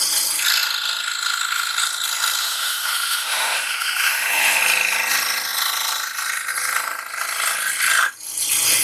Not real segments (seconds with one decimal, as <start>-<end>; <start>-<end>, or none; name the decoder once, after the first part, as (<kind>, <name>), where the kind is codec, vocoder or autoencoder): 2.4-4.6 (autoencoder, DAC-VAE)